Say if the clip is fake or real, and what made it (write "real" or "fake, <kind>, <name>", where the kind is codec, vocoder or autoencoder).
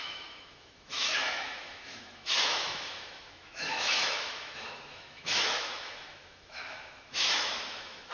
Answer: fake, autoencoder, DAC-VAE